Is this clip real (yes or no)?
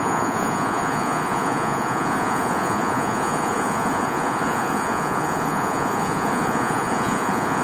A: no